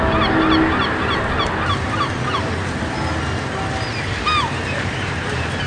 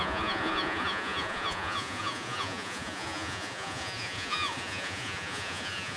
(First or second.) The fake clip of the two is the second